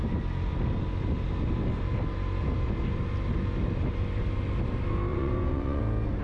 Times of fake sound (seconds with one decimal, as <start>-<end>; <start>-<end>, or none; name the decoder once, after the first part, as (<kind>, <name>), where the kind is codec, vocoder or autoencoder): 5.1-5.8 (vocoder, Vocos)

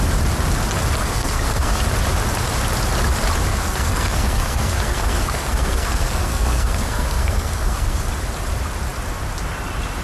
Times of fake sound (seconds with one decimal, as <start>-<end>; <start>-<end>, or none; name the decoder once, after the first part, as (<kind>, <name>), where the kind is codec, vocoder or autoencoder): 1.0-1.8 (codec, SNAC); 3.5-8.1

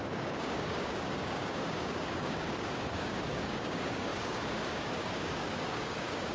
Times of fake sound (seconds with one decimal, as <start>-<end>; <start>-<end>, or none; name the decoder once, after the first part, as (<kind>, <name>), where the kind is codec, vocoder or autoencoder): 0.0-6.3 (codec, DAC)

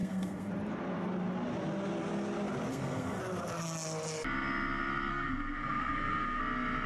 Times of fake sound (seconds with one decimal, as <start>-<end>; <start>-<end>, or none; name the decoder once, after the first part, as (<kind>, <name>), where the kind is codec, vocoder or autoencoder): 0.0-0.5 (codec, SNAC); 2.7-3.2; 5.1-6.4

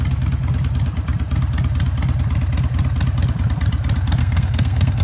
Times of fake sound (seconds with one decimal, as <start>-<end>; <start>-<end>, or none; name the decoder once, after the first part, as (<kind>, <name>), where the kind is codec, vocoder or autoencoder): 4.2-5.0 (codec, SNAC)

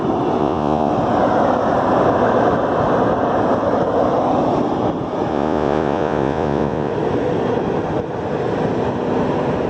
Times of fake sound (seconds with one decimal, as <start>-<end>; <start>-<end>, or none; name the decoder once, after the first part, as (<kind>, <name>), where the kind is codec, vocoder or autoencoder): 0.4-0.9 (vocoder, Vocos); 5.3-6.9

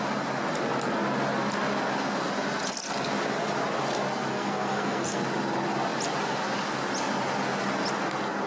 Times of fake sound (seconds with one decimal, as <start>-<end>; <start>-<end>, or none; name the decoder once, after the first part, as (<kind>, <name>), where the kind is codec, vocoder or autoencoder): 4.3-5.2 (codec, SNAC)